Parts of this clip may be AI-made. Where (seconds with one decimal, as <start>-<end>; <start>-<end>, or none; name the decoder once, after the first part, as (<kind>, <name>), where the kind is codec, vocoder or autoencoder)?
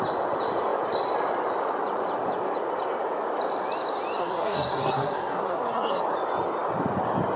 4.2-6.0 (codec, SNAC)